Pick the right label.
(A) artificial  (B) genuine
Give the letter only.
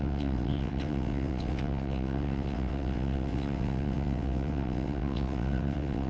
A